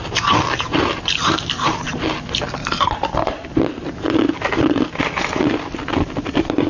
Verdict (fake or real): fake